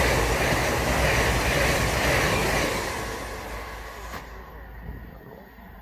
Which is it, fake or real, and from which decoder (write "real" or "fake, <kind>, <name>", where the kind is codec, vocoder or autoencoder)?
real